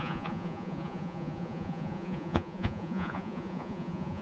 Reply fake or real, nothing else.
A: fake